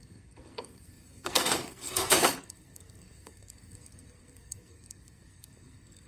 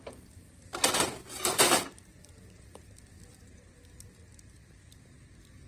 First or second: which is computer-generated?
first